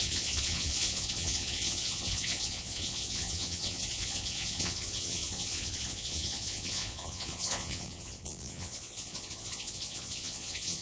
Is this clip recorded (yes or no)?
no